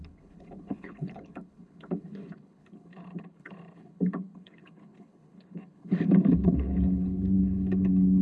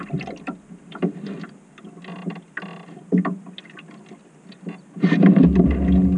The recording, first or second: second